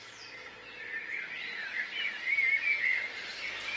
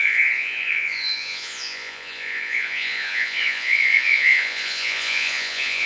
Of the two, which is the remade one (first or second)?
second